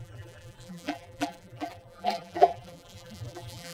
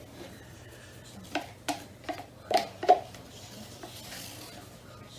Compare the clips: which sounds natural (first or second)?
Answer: second